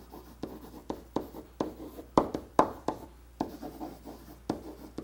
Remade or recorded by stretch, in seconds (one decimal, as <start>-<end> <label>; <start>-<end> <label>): 0.0-0.8 recorded; 0.8-3.8 remade; 3.8-5.0 recorded